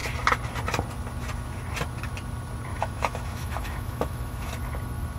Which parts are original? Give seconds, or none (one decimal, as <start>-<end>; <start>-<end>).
0.0-2.7; 4.5-5.2